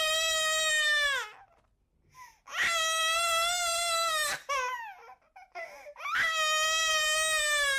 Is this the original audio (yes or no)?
yes